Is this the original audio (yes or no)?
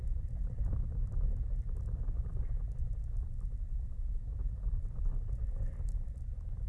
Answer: yes